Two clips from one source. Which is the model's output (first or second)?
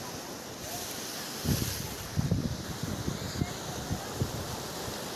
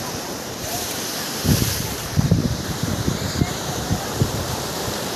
second